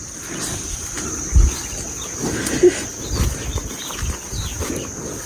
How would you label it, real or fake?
real